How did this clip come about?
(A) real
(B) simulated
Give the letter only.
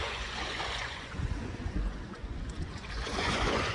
B